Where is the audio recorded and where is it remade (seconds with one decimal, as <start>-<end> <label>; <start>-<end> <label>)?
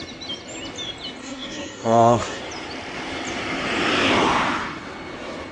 0.0-1.2 recorded; 1.2-2.4 remade; 2.4-5.5 recorded